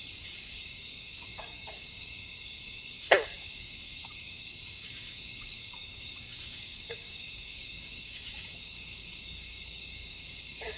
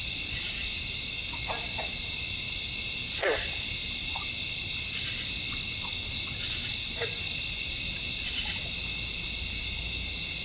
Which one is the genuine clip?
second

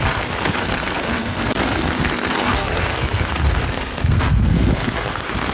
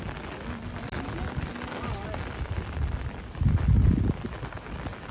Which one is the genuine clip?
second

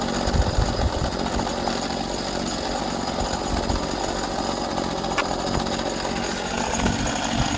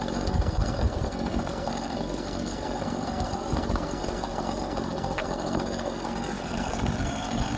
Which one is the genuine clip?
first